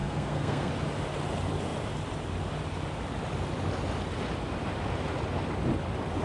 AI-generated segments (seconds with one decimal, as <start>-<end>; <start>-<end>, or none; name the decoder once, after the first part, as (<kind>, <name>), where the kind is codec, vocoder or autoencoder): 0.0-0.7 (codec, SNAC)

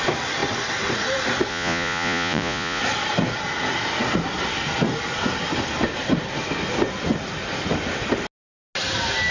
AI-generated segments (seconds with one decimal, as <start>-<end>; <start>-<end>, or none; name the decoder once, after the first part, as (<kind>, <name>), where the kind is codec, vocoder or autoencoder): 1.5-2.8 (vocoder, Vocos)

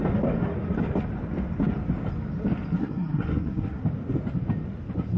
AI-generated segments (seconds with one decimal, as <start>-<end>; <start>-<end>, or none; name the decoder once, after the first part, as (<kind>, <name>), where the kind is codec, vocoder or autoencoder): 2.8-3.8 (codec, SNAC)